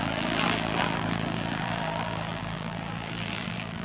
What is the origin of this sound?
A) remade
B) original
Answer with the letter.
A